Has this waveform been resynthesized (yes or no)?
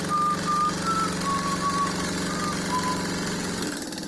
no